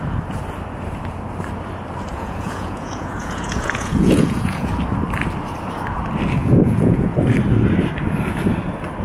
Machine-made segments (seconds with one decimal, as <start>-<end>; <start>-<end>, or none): 2.1-4.7; 6.4-7.2